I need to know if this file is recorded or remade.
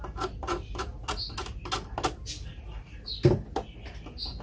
recorded